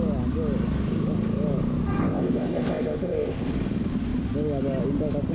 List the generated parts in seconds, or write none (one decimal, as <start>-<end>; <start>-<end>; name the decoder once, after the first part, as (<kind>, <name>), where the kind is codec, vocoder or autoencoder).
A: 2.0-3.5 (codec, ZipCodec)

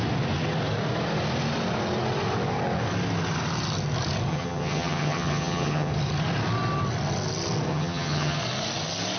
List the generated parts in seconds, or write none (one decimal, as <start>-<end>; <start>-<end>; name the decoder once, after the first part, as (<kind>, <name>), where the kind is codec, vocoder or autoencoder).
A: 4.3-5.9 (vocoder, HiFi-GAN); 7.7-8.4